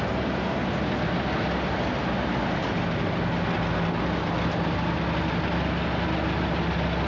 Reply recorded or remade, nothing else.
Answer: recorded